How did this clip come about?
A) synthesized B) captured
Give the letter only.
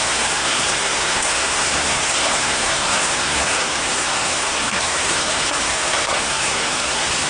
A